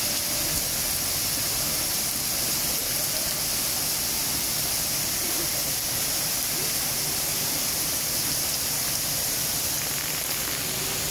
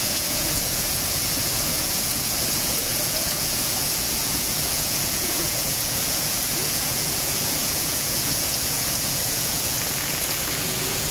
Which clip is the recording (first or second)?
first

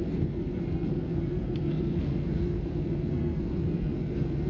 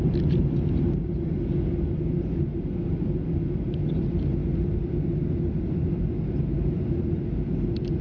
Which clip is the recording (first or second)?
second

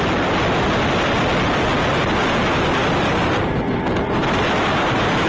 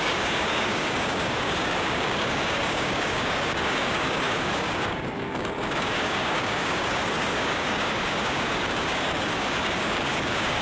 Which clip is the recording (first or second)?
first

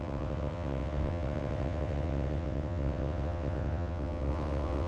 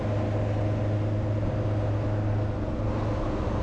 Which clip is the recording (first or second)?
second